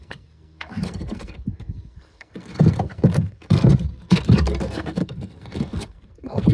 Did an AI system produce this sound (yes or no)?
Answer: yes